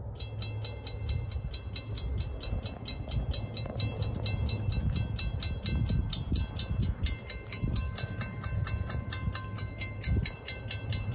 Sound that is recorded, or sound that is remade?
recorded